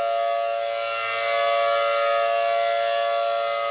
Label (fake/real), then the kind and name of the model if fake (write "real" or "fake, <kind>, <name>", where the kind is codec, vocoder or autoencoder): real